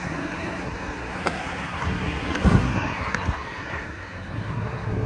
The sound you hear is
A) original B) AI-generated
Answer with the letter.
B